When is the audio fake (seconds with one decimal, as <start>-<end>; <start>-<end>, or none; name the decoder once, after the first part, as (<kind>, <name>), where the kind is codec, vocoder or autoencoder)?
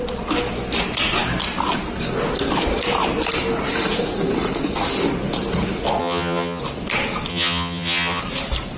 6.0-6.6 (vocoder, HiFi-GAN); 7.3-8.2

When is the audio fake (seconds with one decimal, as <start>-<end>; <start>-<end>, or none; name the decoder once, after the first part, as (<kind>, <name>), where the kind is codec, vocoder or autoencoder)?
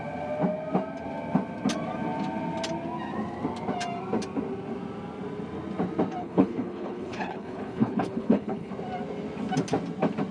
6.2-8.7 (codec, HILCodec)